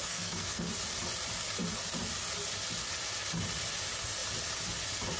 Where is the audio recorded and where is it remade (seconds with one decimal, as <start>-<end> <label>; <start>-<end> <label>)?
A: 0.0-0.7 remade; 0.7-5.2 recorded